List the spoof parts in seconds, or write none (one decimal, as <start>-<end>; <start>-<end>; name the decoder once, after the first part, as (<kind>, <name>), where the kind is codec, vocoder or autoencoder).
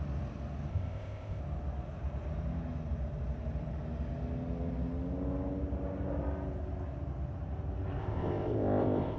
0.7-1.4 (codec, ZipCodec); 8.0-9.2